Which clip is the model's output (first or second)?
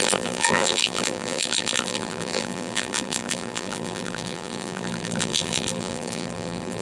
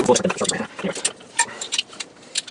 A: first